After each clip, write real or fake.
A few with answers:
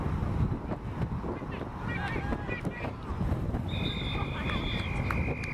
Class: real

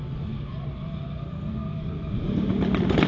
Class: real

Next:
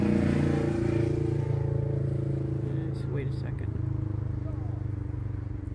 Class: real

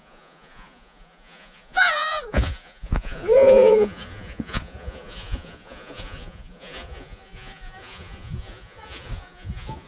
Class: fake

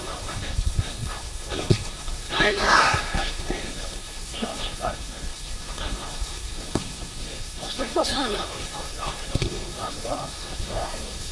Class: fake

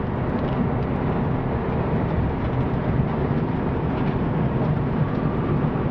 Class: real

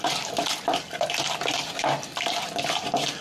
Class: real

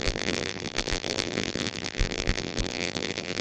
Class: fake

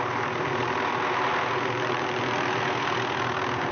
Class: real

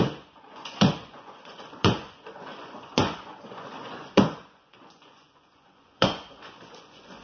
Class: fake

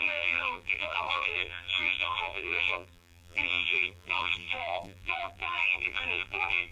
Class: fake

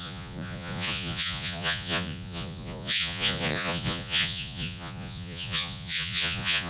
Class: fake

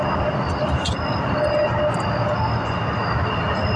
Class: real